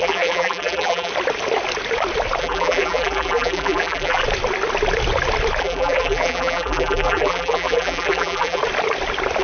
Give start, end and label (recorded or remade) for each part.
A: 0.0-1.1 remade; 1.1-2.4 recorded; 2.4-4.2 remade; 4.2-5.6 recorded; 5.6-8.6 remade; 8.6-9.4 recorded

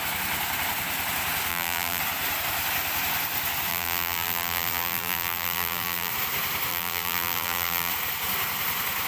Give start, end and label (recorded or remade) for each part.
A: 0.0-1.5 recorded; 1.5-2.0 remade; 2.0-3.7 recorded; 3.7-6.1 remade; 6.1-6.7 recorded; 6.7-7.9 remade; 7.9-9.1 recorded

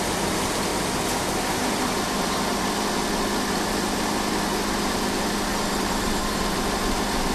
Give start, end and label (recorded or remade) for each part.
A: 0.0-5.5 recorded; 5.5-6.4 remade; 6.4-7.3 recorded

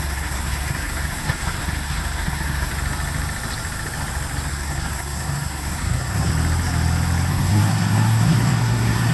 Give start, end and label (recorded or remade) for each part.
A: 0.0-2.7 remade; 2.7-4.5 recorded; 4.5-6.3 remade; 6.3-7.3 recorded; 7.3-9.1 remade

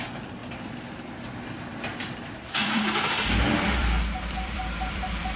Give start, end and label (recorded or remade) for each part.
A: 0.0-0.4 recorded; 0.4-1.0 remade; 1.0-1.9 recorded; 1.9-5.4 remade

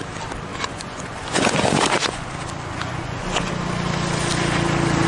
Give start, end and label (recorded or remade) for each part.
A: 0.0-0.5 recorded; 0.5-2.3 remade; 2.3-2.7 recorded; 2.7-3.5 remade; 3.5-5.1 recorded